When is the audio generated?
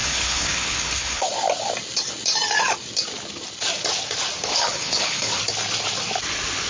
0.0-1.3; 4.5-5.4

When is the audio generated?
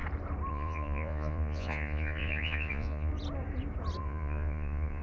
0.5-3.1; 4.0-5.0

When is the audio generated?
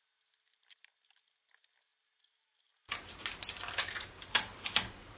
none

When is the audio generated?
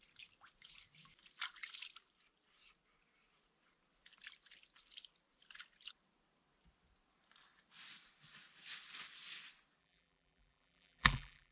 9.8-11.5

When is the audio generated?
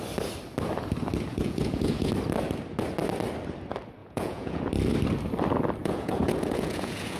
1.3-2.1; 4.0-4.6; 5.8-7.2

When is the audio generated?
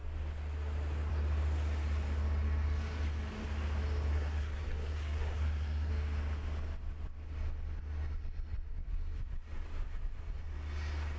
4.1-5.9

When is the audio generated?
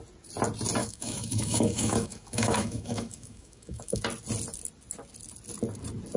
0.8-4.0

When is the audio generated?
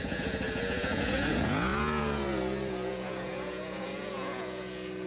0.0-5.1